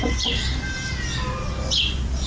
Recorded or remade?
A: recorded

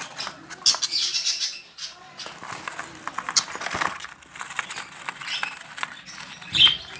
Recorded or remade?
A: recorded